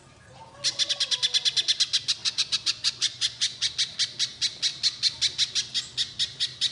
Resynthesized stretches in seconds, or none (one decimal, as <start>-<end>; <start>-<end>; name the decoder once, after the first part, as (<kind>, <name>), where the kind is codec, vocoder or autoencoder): 2.2-3.7 (vocoder, Vocos)